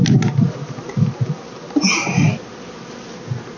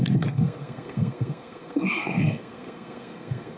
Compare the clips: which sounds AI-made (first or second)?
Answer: second